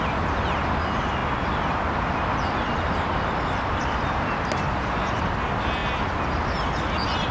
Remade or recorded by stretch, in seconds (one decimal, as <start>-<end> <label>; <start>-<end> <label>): 0.0-7.3 recorded